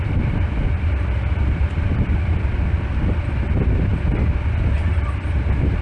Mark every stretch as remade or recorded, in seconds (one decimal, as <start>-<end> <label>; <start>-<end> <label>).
0.0-5.8 recorded